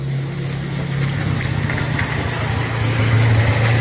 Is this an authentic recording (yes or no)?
yes